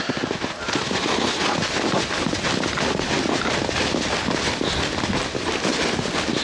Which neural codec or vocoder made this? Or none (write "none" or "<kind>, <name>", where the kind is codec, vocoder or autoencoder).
none